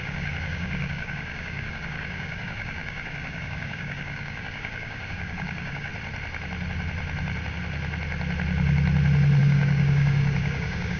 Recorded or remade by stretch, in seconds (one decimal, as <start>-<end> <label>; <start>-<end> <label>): 0.0-5.9 remade; 5.9-9.4 recorded; 9.4-11.0 remade